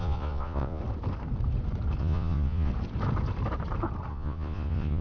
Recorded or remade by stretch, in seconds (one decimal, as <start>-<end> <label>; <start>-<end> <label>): 0.0-0.8 remade; 0.8-2.0 recorded; 2.0-2.7 remade; 2.7-4.1 recorded; 4.1-5.0 remade